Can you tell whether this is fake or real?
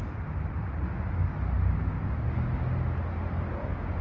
real